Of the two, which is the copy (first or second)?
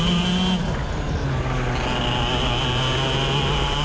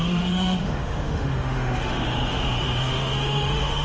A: second